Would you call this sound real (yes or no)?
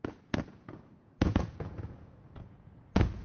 no